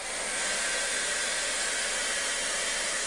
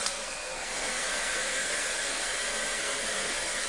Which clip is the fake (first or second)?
second